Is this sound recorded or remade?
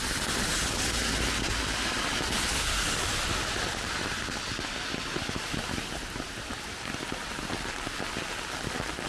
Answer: recorded